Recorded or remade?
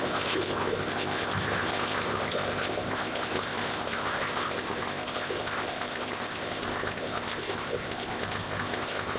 remade